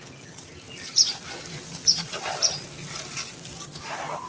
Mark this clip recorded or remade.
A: recorded